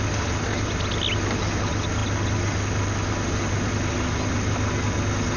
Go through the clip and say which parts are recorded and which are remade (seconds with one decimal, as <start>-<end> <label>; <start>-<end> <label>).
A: 0.0-5.4 recorded

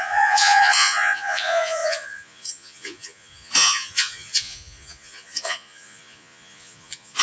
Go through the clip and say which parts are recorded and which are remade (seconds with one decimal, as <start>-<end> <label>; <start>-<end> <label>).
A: 0.0-7.2 remade

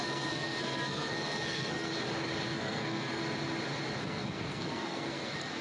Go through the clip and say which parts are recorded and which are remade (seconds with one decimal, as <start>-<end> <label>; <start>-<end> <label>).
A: 0.0-1.9 remade; 1.9-2.5 recorded; 2.5-3.2 remade; 3.2-4.0 recorded; 4.0-5.6 remade